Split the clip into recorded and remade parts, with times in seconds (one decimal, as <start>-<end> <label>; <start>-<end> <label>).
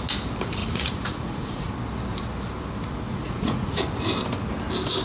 0.0-0.6 recorded; 0.6-1.7 remade; 1.7-3.1 recorded; 3.1-3.8 remade; 3.8-5.0 recorded